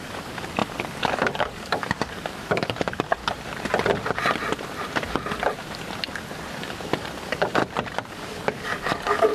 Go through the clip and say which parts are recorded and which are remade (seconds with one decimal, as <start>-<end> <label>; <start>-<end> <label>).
0.0-3.2 remade; 3.2-6.5 recorded; 6.5-7.6 remade; 7.6-8.1 recorded; 8.1-9.3 remade